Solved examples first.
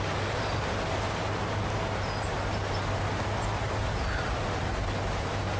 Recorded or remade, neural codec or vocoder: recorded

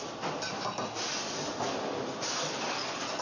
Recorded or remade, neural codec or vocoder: recorded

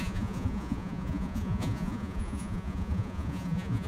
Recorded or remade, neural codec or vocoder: remade, vocoder, Vocos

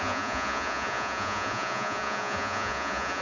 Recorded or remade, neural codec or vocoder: remade, vocoder, Vocos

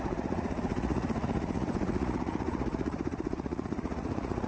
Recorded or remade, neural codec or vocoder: remade, vocoder, Vocos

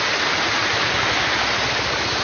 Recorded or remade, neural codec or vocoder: recorded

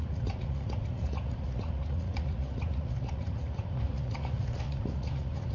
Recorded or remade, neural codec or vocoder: remade, vocoder, Vocos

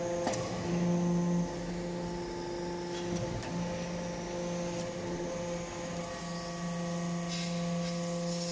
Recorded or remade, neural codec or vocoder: recorded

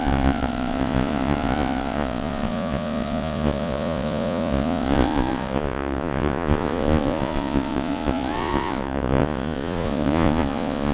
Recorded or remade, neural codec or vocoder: remade, vocoder, Vocos